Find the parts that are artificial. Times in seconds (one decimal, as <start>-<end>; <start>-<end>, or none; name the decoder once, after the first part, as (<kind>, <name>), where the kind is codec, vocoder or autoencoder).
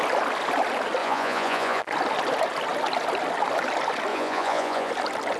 1.0-1.8 (vocoder, Vocos); 4.1-4.9